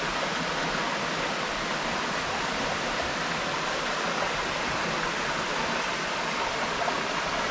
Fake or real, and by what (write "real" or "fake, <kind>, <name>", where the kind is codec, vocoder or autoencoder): real